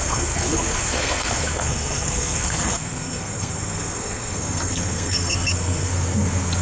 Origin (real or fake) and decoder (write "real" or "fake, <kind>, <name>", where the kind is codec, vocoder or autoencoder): fake, codec, SNAC